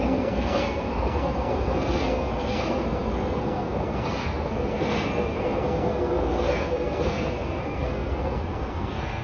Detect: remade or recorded remade